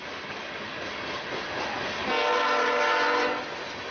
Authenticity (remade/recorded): recorded